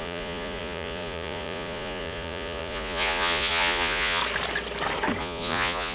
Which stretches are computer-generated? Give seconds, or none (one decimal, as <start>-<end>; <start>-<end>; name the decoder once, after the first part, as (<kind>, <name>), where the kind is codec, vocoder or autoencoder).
0.0-4.2 (vocoder, Vocos); 5.2-5.9